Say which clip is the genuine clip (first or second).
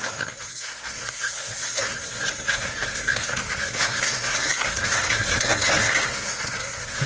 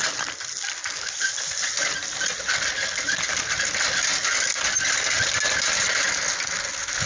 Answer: second